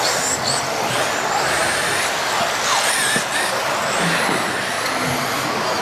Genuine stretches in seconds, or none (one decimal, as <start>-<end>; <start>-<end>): 0.0-5.8